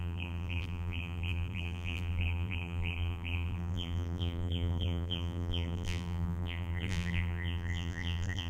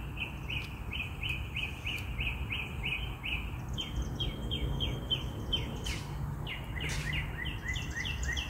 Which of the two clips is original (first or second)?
second